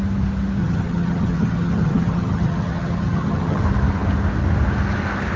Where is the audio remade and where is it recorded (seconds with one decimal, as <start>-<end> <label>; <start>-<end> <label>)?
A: 0.0-0.6 recorded; 0.6-3.6 remade; 3.6-5.4 recorded